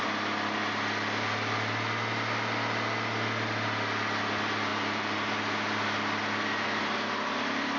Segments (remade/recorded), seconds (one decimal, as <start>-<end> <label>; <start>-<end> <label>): 0.0-4.7 recorded; 4.7-5.3 remade; 5.3-7.8 recorded